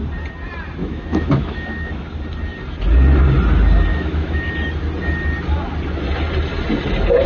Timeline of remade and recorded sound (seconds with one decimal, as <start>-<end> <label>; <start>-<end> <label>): 0.0-0.8 recorded; 0.8-1.9 remade; 1.9-3.9 recorded; 3.9-4.5 remade; 4.5-7.3 recorded